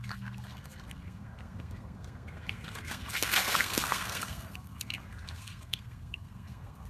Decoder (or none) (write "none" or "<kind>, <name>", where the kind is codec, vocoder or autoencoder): codec, SNAC